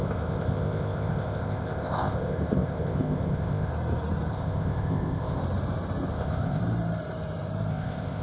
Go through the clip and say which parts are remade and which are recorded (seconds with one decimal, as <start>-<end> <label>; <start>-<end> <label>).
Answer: 0.0-3.7 remade; 3.7-4.3 recorded; 4.3-5.4 remade; 5.4-6.1 recorded; 6.1-6.6 remade; 6.6-7.7 recorded; 7.7-8.2 remade